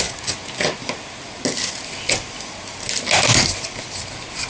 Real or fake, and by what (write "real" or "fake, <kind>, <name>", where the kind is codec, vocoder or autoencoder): real